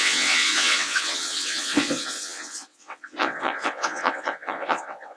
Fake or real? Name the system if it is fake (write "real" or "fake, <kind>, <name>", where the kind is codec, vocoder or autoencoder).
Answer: fake, vocoder, WaveNeXt